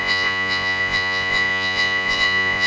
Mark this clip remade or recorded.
remade